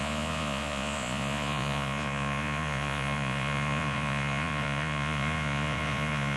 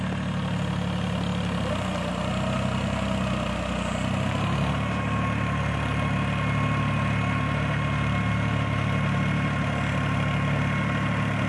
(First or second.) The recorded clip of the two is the second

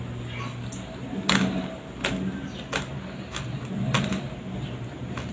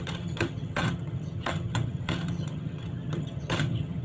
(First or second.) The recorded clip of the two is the first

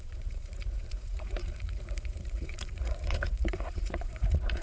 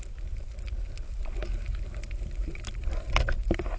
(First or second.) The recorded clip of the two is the second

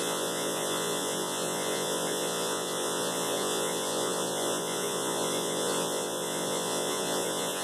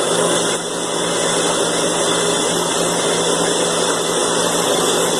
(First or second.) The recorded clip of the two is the second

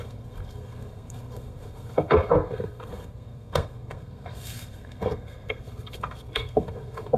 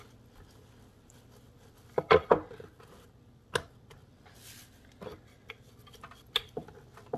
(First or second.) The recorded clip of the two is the second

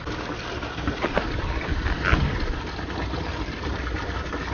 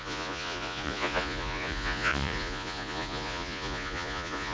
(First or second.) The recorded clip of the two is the first